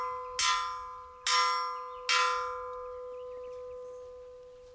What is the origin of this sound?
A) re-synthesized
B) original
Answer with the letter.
B